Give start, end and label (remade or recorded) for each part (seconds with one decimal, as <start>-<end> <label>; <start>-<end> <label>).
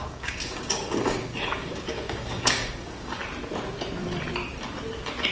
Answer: 0.0-3.2 remade; 3.2-5.3 recorded